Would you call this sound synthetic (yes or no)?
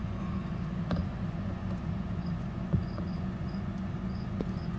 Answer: yes